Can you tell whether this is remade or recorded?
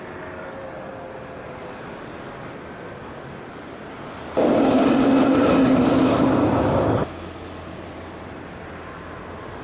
recorded